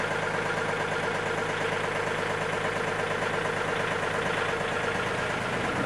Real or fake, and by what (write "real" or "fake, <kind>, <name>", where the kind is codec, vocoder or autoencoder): real